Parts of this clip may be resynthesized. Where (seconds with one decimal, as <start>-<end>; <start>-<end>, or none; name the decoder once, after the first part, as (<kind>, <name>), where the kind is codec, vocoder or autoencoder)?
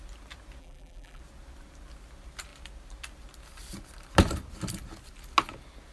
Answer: 0.6-1.2 (vocoder, BigVGAN v2)